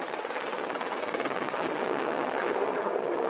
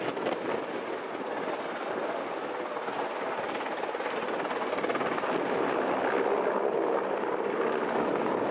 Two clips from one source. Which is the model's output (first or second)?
first